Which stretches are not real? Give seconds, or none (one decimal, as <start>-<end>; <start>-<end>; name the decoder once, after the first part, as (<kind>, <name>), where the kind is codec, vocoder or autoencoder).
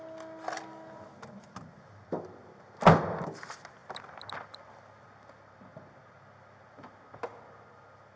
none